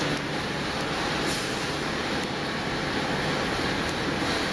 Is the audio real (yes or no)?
yes